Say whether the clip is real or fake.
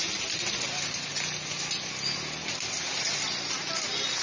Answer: real